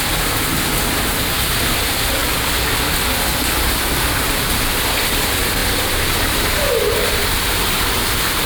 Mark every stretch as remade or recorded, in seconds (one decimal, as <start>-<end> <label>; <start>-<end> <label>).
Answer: 0.0-8.5 recorded